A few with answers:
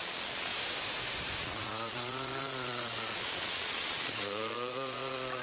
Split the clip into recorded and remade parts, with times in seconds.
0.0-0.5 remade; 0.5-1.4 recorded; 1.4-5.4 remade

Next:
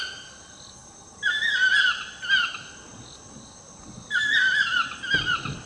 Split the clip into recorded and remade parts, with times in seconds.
0.0-5.7 recorded

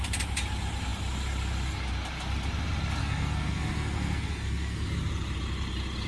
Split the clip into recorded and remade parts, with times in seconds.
0.0-3.0 recorded; 3.0-4.9 remade; 4.9-6.1 recorded

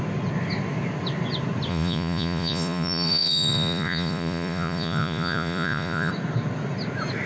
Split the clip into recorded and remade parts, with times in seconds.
0.0-1.7 recorded; 1.7-6.1 remade; 6.1-7.3 recorded

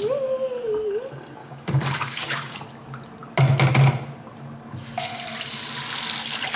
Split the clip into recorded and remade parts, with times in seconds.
0.0-1.4 recorded; 1.4-2.6 remade; 2.6-6.6 recorded